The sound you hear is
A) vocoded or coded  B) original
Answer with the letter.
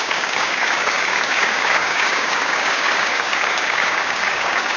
A